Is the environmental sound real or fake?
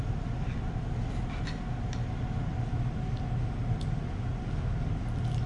real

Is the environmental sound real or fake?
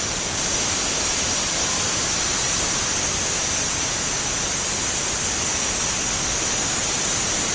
real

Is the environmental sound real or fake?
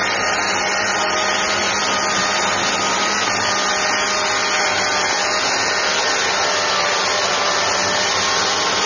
real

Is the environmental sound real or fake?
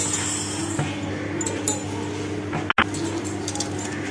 real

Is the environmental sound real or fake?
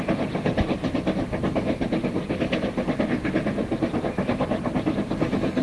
real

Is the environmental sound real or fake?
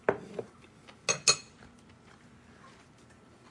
real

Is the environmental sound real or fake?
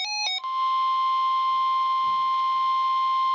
real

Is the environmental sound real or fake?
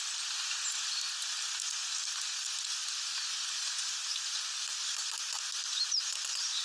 real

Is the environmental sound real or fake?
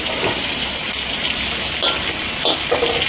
real